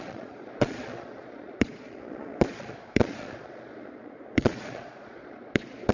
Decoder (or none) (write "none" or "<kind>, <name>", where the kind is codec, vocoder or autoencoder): vocoder, Vocos